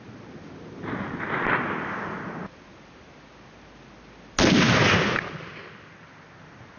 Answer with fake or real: real